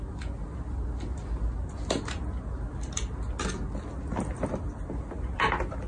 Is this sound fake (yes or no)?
no